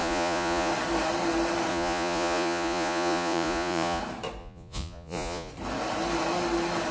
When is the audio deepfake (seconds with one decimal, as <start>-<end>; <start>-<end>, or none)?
0.0-0.7; 1.7-4.0; 4.4-5.5